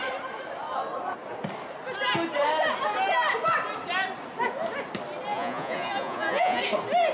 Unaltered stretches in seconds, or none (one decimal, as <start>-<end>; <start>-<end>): 0.0-5.3; 6.6-7.1